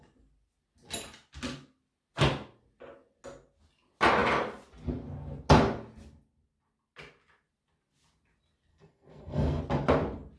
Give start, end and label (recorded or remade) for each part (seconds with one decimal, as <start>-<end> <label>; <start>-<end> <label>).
0.0-8.7 recorded; 8.7-9.6 remade; 9.6-10.4 recorded